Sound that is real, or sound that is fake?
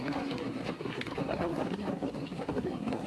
fake